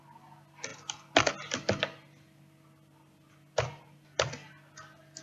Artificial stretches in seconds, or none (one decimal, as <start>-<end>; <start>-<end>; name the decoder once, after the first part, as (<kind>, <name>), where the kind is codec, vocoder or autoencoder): none